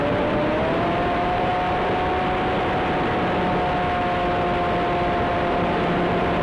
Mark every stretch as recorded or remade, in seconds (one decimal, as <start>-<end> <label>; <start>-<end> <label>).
0.0-1.5 remade; 1.5-5.3 recorded; 5.3-6.4 remade